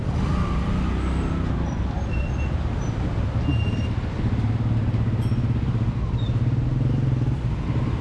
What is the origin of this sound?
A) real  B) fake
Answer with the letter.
A